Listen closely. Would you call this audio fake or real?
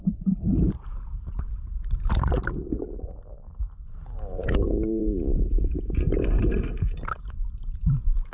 fake